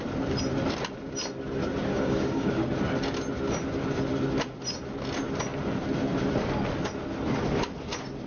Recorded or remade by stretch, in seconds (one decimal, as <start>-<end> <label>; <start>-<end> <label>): 0.0-1.9 recorded; 1.9-2.7 remade; 2.7-8.3 recorded